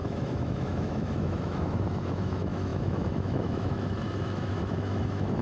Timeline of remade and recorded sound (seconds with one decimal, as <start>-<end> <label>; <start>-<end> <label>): 0.0-5.4 remade